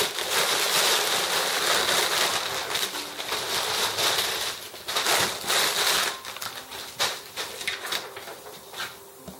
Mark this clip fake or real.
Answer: real